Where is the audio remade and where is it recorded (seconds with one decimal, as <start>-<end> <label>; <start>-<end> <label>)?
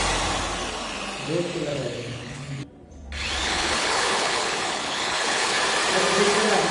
0.0-1.7 recorded; 1.7-2.6 remade; 2.6-3.4 recorded; 3.4-5.6 remade; 5.6-6.7 recorded